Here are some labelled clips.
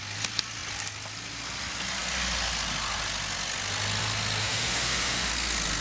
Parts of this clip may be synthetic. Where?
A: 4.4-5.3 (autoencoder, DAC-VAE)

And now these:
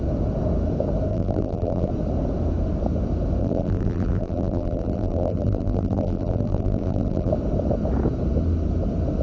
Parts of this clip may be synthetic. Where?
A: 1.1-1.9 (vocoder, BigVGAN v2); 3.4-7.3

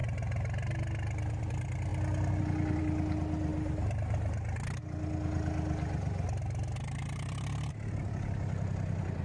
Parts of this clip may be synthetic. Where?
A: none

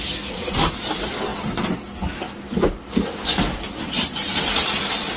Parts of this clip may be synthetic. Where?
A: none

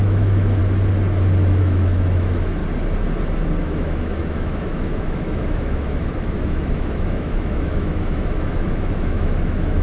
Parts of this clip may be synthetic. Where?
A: 0.0-0.6 (autoencoder, DAC-VAE); 1.6-2.6; 3.6-9.8

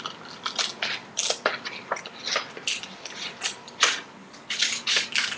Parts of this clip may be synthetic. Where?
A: 4.2-5.4 (codec, DAC)

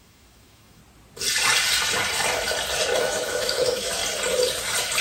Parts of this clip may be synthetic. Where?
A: 0.0-0.8 (autoencoder, DAC-VAE); 3.0-4.0

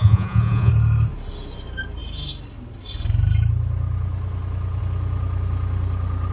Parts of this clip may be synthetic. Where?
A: 0.0-0.7 (vocoder, Vocos)